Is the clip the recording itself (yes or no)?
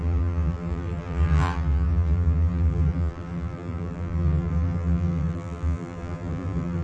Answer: no